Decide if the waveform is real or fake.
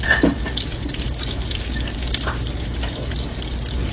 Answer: real